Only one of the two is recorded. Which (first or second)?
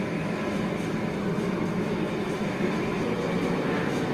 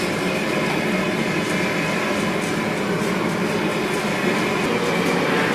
second